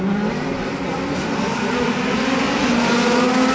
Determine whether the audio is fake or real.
real